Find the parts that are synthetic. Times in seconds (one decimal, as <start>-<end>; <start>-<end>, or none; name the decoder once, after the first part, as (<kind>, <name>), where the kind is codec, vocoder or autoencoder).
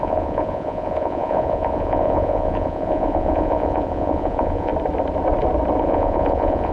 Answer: 0.0-4.7 (vocoder, Vocos); 5.8-6.7